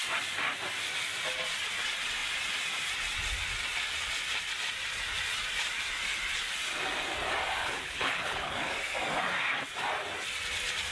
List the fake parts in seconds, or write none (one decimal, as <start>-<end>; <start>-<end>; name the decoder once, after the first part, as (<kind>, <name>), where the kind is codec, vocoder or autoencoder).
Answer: 7.6-8.7 (codec, HILCodec)